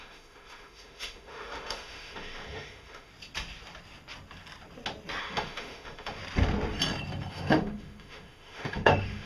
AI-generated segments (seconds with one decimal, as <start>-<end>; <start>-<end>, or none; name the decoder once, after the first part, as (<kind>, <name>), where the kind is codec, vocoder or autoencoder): 0.0-3.1 (autoencoder, DAC-VAE); 5.2-6.2; 7.3-9.3